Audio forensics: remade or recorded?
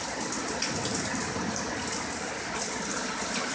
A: recorded